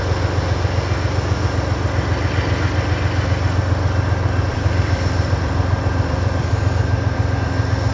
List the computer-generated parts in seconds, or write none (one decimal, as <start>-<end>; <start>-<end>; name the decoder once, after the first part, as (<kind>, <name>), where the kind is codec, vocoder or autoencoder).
4.5-7.5 (vocoder, BigVGAN v2)

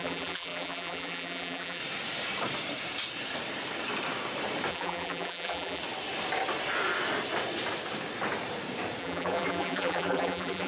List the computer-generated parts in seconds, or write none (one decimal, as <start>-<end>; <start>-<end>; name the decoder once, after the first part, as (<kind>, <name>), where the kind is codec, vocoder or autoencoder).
0.0-1.8 (vocoder, BigVGAN v2); 4.7-5.8; 9.0-10.7